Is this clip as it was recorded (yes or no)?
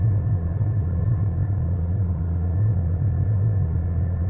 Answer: no